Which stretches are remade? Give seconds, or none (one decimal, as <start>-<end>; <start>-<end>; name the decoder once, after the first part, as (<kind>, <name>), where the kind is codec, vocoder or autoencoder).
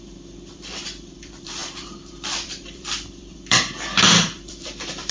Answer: 0.0-5.1 (vocoder, BigVGAN v2)